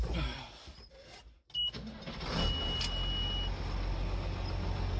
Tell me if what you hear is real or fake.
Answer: real